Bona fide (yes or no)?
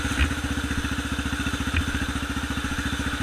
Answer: yes